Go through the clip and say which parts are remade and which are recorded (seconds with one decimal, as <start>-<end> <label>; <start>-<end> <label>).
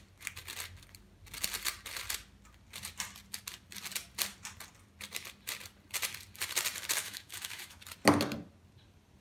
0.0-7.0 recorded; 7.0-7.8 remade; 7.8-9.2 recorded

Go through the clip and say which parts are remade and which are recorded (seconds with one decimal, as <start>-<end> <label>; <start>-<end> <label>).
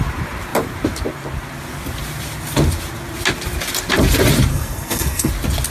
0.0-4.5 recorded; 4.5-5.3 remade; 5.3-5.7 recorded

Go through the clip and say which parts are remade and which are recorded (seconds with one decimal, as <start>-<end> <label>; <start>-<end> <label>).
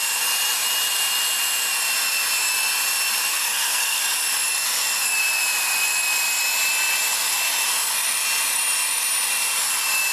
0.0-3.3 recorded; 3.3-4.0 remade; 4.0-10.1 recorded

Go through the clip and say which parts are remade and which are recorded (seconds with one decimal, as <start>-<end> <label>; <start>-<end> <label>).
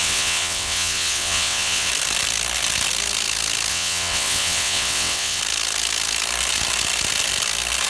0.0-1.9 remade; 1.9-3.7 recorded; 3.7-5.4 remade; 5.4-7.9 recorded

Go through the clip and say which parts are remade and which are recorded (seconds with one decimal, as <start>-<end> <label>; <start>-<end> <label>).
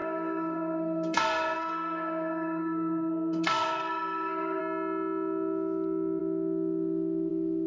0.0-4.6 remade; 4.6-7.7 recorded